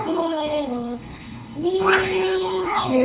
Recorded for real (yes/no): no